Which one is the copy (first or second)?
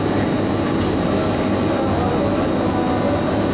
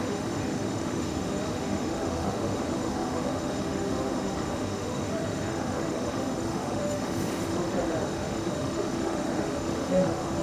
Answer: second